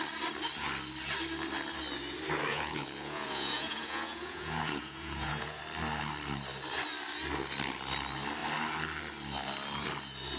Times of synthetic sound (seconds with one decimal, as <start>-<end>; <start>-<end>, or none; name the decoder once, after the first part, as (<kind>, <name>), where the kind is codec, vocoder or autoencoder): 2.5-5.6 (vocoder, Vocos)